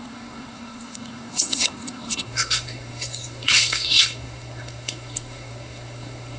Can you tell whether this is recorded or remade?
remade